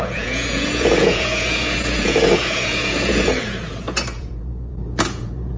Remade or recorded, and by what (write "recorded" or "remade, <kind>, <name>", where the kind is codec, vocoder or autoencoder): remade, vocoder, Vocos